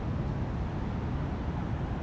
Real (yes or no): yes